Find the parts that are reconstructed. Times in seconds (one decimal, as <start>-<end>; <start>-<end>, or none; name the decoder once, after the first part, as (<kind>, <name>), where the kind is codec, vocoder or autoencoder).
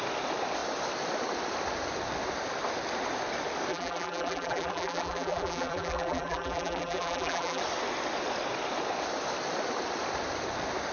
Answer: 3.7-7.6 (vocoder, BigVGAN v2)